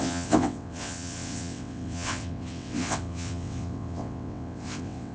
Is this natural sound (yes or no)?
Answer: no